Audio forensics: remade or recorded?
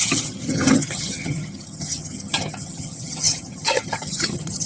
remade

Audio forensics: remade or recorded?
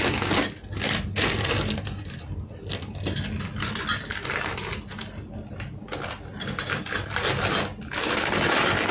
recorded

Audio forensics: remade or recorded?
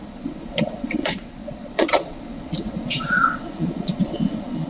remade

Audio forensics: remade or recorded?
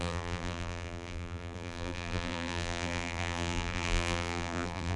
remade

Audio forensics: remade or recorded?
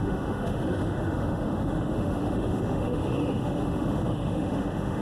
remade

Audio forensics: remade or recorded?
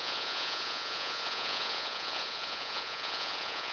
remade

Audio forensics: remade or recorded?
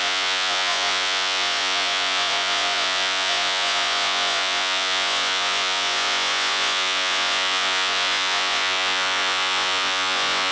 remade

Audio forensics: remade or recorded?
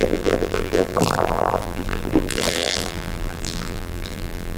remade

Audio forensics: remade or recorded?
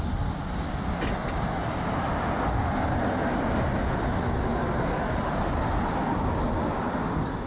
recorded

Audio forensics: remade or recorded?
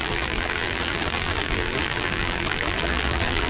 remade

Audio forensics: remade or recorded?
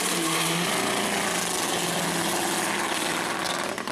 recorded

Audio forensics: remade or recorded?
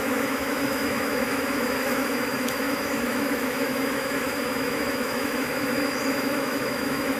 remade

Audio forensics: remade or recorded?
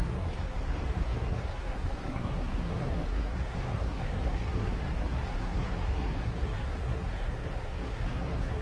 remade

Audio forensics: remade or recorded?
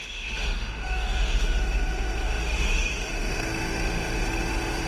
remade